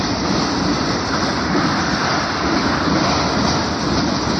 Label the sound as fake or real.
real